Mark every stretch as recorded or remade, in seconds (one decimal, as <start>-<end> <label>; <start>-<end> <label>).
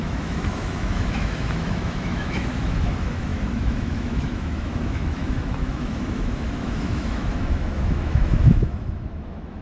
0.0-9.6 remade